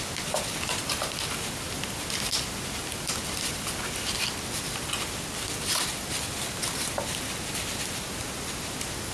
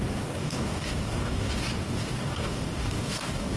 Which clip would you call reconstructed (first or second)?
second